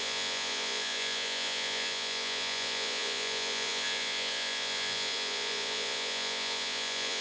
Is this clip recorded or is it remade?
remade